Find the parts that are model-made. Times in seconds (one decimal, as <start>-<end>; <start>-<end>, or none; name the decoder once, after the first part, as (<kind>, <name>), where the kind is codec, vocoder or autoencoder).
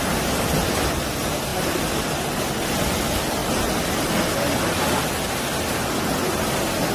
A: none